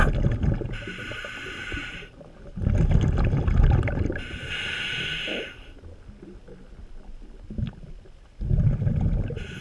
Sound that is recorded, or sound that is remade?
recorded